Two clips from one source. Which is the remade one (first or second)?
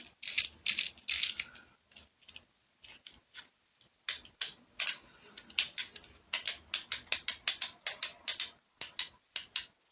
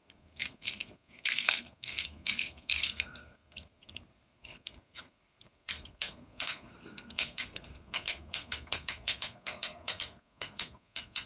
second